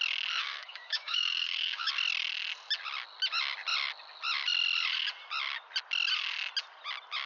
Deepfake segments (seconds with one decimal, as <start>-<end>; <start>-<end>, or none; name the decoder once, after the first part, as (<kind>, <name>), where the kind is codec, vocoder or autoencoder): 0.4-1.9 (codec, DAC)